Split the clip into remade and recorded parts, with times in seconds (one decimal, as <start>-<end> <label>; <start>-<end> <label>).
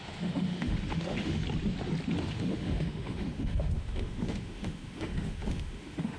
0.0-1.4 remade; 1.4-2.2 recorded; 2.2-6.2 remade